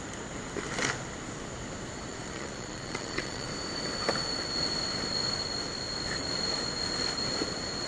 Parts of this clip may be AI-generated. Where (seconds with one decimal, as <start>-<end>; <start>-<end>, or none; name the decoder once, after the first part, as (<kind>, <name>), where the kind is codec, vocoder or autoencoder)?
2.1-3.5 (vocoder, Vocos)